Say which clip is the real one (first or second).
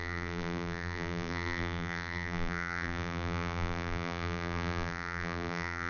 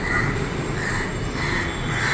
second